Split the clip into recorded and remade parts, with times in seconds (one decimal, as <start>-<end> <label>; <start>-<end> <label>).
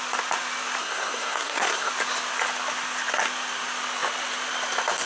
0.0-0.8 recorded; 0.8-1.9 remade; 1.9-5.1 recorded